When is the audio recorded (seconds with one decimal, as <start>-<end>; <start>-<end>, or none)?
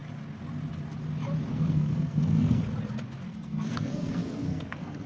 0.0-1.5; 2.6-3.3